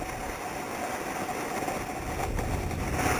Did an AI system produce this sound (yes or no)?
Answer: no